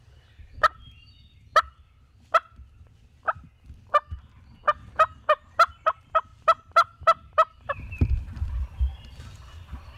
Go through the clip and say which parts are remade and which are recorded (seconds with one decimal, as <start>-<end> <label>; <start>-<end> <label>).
0.0-1.5 remade; 1.5-5.7 recorded; 5.7-10.0 remade